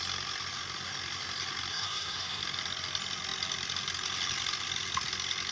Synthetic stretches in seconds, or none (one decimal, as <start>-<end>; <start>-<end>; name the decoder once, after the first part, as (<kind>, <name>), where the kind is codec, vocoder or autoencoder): 1.7-2.4 (codec, SNAC)